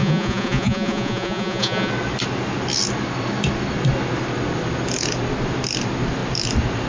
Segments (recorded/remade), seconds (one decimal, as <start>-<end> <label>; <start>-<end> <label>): 0.0-1.9 remade; 1.9-6.9 recorded